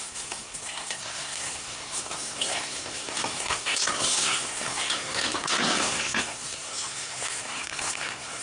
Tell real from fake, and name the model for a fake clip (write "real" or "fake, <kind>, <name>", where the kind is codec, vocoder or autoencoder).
fake, codec, SNAC